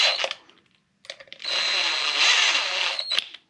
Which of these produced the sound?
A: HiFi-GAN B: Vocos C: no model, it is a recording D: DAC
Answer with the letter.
C